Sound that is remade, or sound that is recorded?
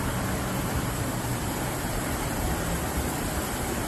remade